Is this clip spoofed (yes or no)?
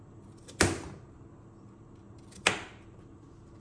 no